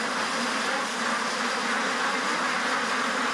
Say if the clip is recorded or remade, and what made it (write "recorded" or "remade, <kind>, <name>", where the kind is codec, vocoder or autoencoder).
recorded